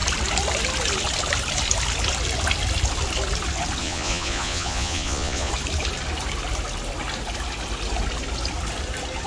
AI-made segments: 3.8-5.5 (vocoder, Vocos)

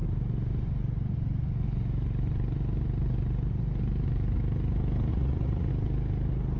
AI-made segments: 5.1-5.7 (vocoder, Vocos)

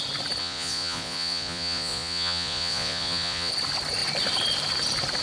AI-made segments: 0.4-3.5 (vocoder, Vocos)

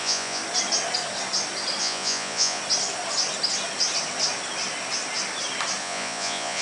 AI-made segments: 0.0-0.4 (vocoder, Vocos); 1.8-2.6; 5.8-6.6

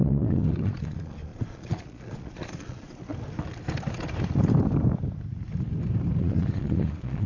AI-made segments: 0.0-3.1 (vocoder, Vocos); 6.2-7.3

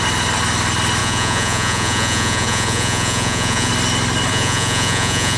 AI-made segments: 1.0-3.7 (vocoder, Vocos); 4.3-5.4

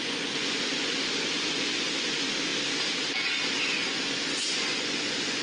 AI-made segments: 0.0-2.5 (vocoder, Vocos); 3.6-5.4

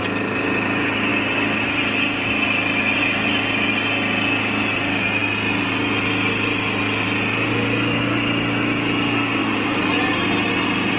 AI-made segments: none